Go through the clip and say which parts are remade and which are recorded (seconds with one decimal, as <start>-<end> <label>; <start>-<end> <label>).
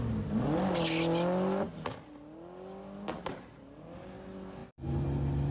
0.0-5.5 recorded